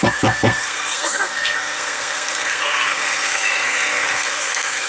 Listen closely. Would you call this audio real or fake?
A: fake